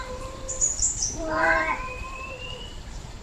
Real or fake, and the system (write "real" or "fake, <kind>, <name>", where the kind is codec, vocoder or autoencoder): fake, vocoder, BigVGAN v2